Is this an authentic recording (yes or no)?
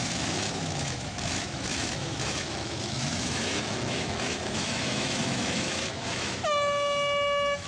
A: no